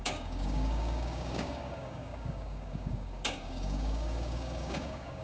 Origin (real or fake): fake